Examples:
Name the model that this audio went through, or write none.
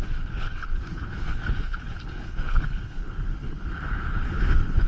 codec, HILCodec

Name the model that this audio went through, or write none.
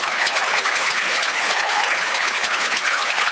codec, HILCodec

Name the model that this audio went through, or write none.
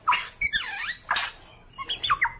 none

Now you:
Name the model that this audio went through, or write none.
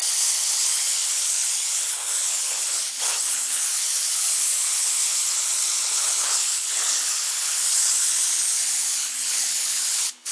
codec, HILCodec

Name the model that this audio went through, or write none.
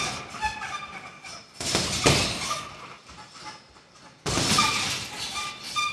none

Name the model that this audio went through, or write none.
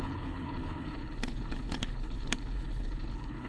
codec, HILCodec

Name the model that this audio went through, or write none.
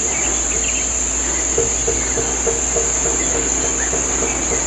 none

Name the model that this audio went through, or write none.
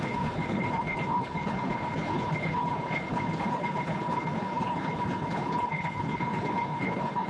codec, HILCodec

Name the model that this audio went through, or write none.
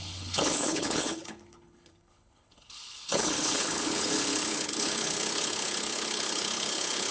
codec, HILCodec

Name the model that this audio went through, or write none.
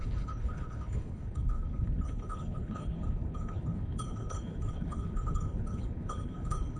codec, HILCodec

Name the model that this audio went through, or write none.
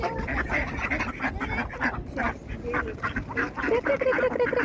none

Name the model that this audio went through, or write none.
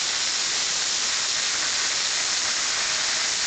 none